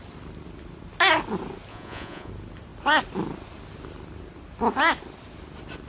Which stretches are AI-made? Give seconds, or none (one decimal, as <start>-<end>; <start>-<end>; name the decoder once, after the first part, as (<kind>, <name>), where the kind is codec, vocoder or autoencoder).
1.7-2.3 (vocoder, Vocos)